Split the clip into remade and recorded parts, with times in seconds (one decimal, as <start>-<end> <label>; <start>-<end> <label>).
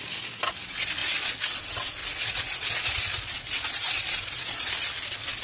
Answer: 0.0-1.0 recorded; 1.0-1.6 remade; 1.6-2.0 recorded; 2.0-4.7 remade; 4.7-5.4 recorded